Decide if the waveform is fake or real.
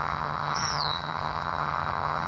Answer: fake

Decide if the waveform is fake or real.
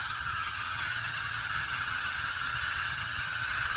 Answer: fake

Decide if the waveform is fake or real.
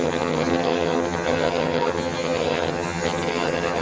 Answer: fake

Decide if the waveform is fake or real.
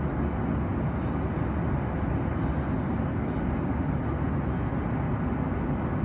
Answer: real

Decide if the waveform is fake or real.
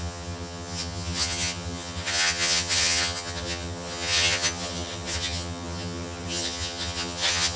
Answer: fake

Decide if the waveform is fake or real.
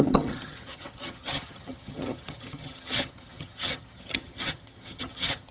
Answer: fake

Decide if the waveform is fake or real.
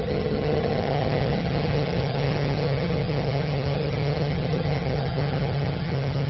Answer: fake